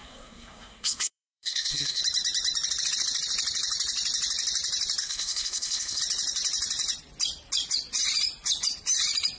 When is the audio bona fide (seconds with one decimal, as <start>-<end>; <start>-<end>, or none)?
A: 2.0-5.0; 6.0-9.4